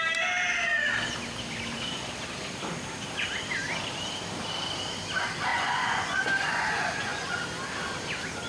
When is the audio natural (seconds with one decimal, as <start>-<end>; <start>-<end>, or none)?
0.0-5.5; 7.4-8.5